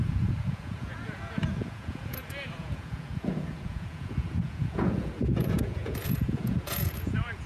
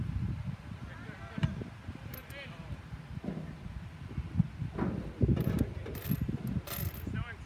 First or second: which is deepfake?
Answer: first